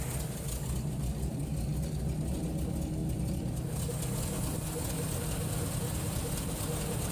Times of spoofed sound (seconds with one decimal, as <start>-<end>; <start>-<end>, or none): 3.0-3.8